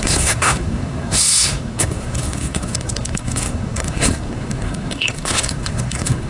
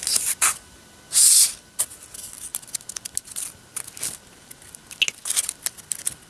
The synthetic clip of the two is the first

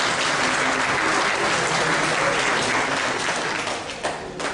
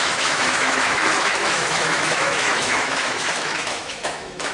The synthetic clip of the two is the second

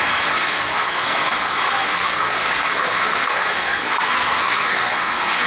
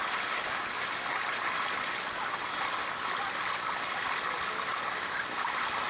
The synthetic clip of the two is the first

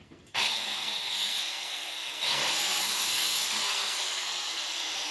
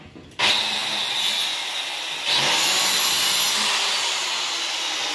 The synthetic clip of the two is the first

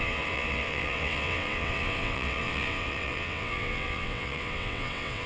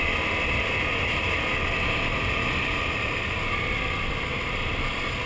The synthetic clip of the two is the first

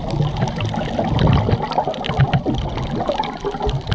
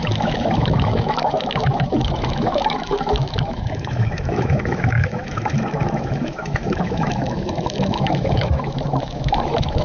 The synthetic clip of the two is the second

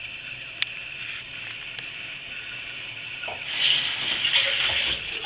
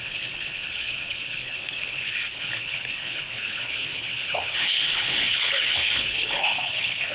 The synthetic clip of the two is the second